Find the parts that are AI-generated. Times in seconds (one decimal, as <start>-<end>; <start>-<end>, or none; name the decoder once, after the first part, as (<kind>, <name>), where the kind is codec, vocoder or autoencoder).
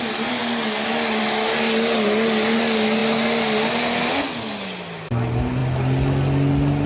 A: none